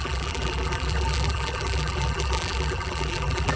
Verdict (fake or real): fake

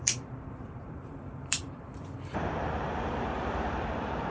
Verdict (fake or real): fake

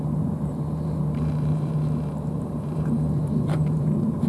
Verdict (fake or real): fake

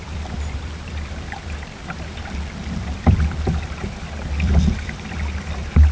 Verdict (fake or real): fake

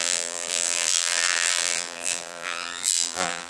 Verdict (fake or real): fake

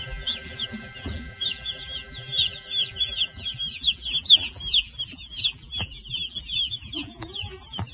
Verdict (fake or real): fake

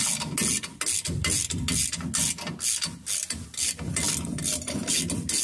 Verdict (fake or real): real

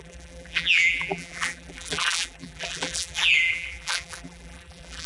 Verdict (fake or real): fake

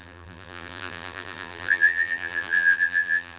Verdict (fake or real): fake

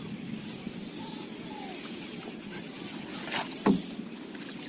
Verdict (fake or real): real